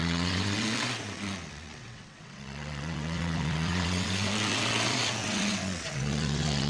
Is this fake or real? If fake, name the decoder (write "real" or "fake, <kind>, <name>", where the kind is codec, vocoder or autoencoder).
fake, vocoder, WaveNeXt